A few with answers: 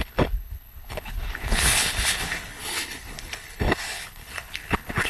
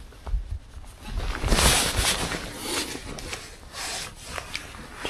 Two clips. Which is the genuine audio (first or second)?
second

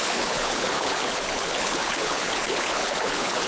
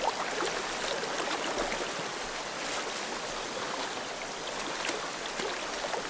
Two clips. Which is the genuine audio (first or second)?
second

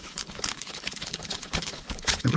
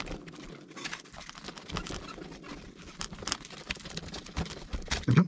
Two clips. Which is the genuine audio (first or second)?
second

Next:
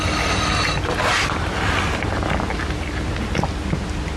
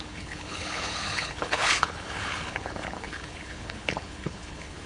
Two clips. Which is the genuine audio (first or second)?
first